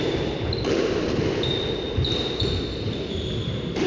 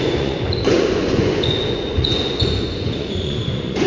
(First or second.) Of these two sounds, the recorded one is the first